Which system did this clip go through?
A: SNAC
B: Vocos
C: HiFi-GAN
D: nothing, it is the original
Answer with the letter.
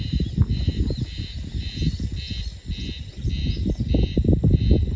D